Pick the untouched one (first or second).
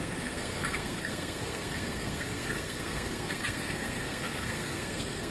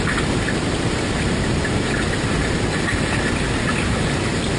second